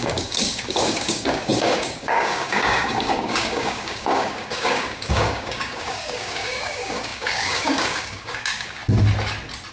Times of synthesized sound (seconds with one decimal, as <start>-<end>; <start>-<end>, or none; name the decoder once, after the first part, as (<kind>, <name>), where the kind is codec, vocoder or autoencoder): 0.0-8.8 (codec, DAC)